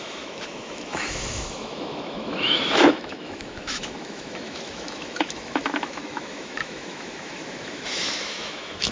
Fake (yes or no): yes